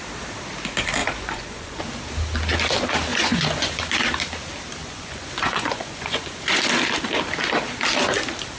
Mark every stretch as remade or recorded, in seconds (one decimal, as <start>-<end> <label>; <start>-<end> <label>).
0.0-1.0 recorded; 1.0-1.8 remade; 1.8-3.1 recorded; 3.1-3.8 remade; 3.8-4.8 recorded; 4.8-6.6 remade; 6.6-8.6 recorded